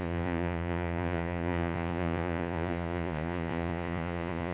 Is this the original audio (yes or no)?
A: no